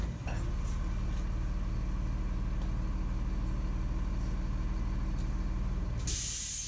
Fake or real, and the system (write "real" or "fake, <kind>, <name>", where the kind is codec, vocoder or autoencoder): real